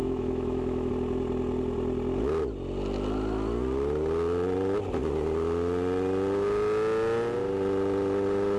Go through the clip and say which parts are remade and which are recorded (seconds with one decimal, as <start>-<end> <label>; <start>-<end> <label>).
0.0-0.9 remade; 0.9-8.6 recorded